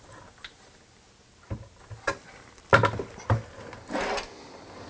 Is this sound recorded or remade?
recorded